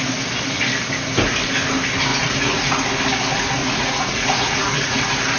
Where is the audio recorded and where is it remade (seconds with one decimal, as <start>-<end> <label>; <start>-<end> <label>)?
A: 0.0-2.1 recorded; 2.1-2.7 remade; 2.7-3.6 recorded; 3.6-5.0 remade; 5.0-5.4 recorded

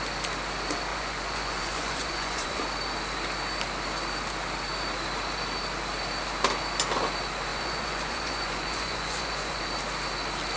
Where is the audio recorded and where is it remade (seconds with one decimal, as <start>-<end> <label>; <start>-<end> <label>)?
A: 0.0-0.9 recorded; 0.9-2.6 remade; 2.6-7.5 recorded; 7.5-9.6 remade; 9.6-10.6 recorded

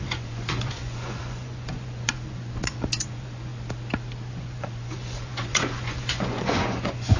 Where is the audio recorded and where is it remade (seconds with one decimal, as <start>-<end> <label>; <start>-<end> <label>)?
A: 0.0-3.5 remade; 3.5-4.3 recorded; 4.3-7.2 remade

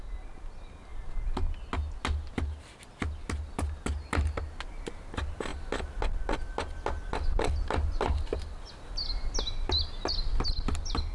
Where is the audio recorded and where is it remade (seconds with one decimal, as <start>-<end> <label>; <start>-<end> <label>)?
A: 0.0-11.1 recorded

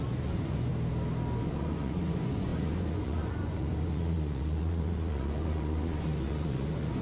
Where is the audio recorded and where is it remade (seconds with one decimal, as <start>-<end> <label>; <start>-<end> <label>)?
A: 0.0-0.7 remade; 0.7-1.4 recorded; 1.4-7.0 remade

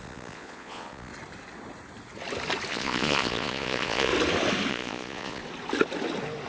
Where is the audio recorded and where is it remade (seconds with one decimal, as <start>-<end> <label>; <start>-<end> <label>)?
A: 0.0-1.1 remade; 1.1-2.7 recorded; 2.7-4.1 remade; 4.1-4.7 recorded; 4.7-5.4 remade; 5.4-6.5 recorded